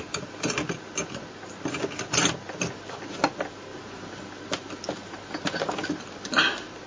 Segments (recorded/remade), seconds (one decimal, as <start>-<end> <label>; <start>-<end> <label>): 0.0-3.7 recorded; 3.7-6.4 remade; 6.4-6.9 recorded